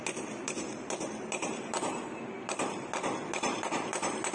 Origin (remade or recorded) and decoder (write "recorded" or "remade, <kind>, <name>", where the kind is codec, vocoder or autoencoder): recorded